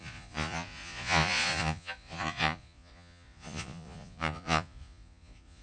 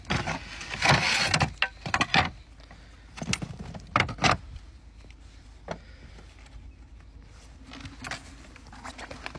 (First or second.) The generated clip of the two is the first